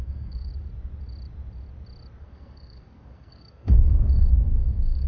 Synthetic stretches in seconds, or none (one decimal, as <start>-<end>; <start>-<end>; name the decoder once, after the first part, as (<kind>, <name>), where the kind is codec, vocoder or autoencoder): 0.0-0.5 (codec, SNAC); 2.2-5.1